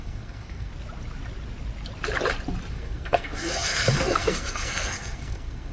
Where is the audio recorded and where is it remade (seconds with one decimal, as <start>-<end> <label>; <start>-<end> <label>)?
0.0-0.7 remade; 0.7-2.7 recorded; 2.7-5.7 remade